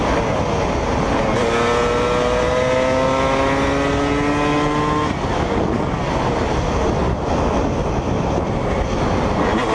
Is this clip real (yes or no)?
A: yes